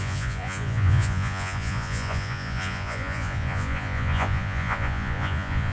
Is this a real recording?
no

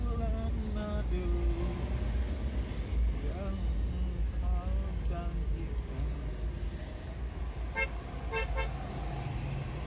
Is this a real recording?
yes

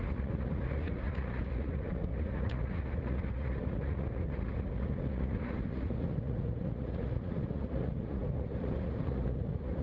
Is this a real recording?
no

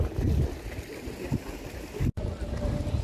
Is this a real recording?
yes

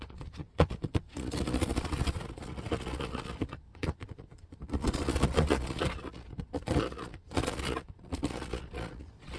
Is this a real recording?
no